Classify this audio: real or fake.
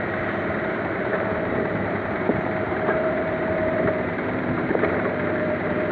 fake